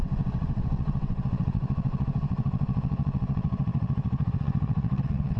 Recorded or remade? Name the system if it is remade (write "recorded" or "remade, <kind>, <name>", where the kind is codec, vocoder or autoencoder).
remade, vocoder, WaveNeXt